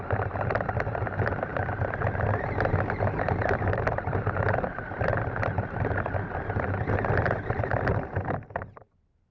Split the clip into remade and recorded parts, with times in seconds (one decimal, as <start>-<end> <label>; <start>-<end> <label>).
0.0-9.3 recorded